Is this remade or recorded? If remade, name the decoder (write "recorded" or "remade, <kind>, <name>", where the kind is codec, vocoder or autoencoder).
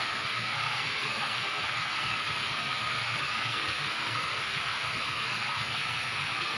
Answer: remade, codec, SNAC